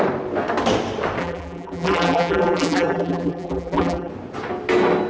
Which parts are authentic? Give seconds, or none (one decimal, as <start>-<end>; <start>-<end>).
0.0-1.2; 4.1-5.1